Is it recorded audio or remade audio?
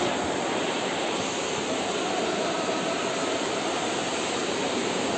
remade